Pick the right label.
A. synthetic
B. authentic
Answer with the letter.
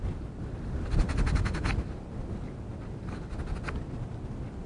B